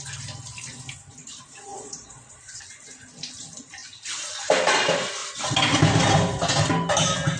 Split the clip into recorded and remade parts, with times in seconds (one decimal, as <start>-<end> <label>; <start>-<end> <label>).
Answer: 0.0-1.7 recorded; 1.7-2.6 remade; 2.6-7.4 recorded